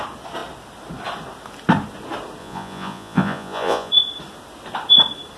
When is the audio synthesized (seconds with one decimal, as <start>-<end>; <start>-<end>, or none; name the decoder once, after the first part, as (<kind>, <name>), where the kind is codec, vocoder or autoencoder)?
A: 2.4-3.9 (vocoder, Vocos)